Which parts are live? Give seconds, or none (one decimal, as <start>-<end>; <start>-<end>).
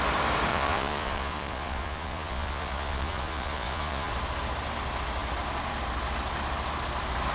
0.0-0.5; 4.1-7.3